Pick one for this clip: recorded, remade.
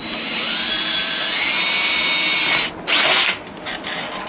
recorded